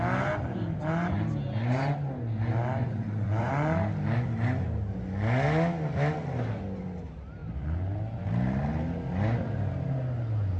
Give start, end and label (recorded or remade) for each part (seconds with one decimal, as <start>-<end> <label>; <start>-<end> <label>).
0.0-2.8 recorded; 2.8-3.5 remade; 3.5-10.6 recorded